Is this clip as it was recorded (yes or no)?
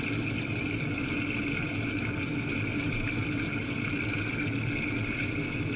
yes